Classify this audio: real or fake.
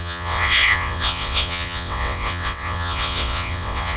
fake